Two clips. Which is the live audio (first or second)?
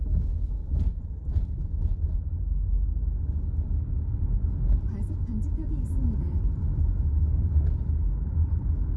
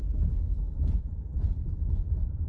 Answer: first